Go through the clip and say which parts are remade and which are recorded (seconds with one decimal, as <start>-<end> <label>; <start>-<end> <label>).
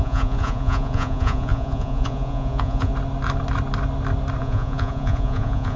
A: 0.0-2.9 remade; 2.9-4.4 recorded; 4.4-5.8 remade